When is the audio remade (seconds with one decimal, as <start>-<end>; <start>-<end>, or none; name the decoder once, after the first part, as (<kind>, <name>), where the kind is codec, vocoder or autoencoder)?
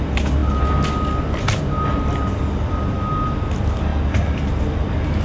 none